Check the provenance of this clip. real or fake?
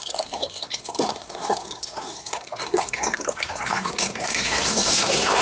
fake